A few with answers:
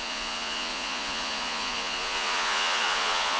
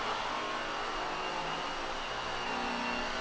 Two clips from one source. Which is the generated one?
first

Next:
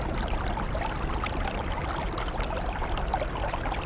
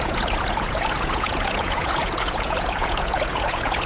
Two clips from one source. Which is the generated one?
second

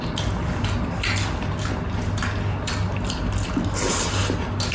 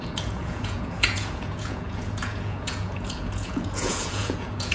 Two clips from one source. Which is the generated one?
second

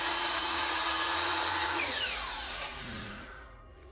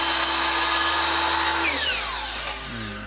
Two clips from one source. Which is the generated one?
first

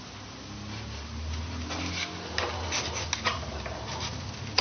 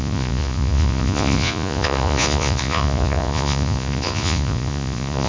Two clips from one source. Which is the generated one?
second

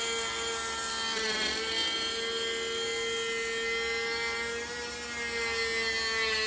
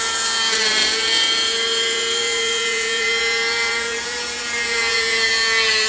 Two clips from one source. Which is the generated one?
second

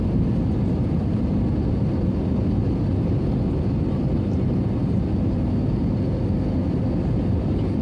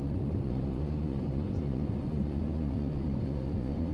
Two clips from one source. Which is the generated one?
second